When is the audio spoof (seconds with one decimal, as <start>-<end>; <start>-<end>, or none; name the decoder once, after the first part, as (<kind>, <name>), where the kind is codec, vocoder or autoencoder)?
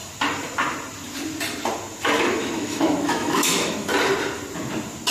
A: 2.3-3.9 (autoencoder, DAC-VAE)